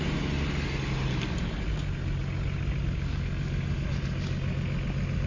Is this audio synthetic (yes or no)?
no